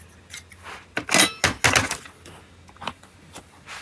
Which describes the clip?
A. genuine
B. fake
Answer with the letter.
A